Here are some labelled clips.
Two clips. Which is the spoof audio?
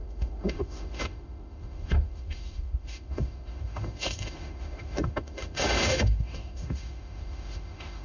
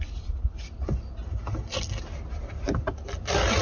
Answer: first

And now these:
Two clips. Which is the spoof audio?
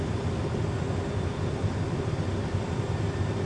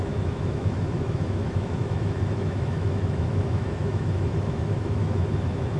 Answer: second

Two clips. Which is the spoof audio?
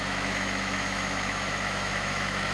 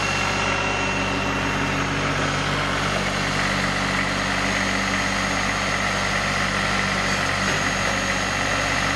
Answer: first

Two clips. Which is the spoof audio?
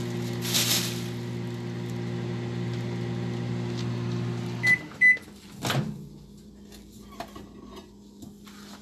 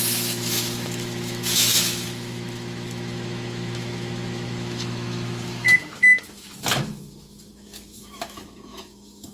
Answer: second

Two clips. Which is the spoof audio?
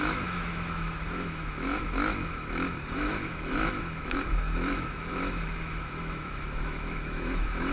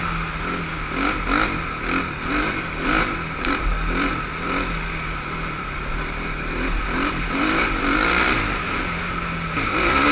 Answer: first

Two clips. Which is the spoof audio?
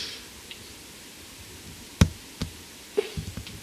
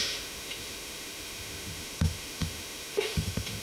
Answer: second